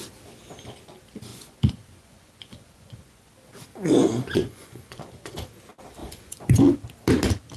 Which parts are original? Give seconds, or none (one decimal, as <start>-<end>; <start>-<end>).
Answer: 0.0-1.3; 3.3-4.0; 5.5-6.0; 6.6-7.6